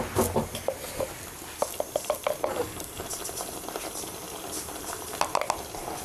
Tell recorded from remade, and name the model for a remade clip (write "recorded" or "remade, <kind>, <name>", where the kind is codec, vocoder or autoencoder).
recorded